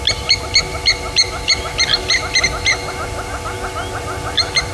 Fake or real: real